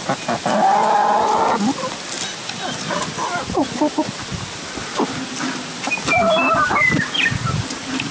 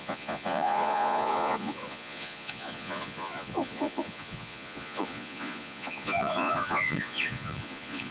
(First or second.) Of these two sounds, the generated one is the second